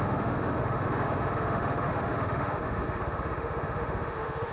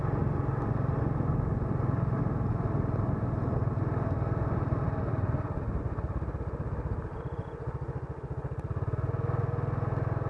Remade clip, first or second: first